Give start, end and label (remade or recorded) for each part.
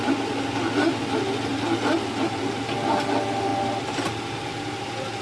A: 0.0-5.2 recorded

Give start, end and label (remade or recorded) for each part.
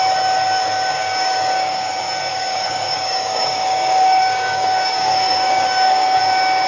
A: 0.0-0.9 recorded; 0.9-1.9 remade; 1.9-2.3 recorded; 2.3-6.2 remade; 6.2-6.7 recorded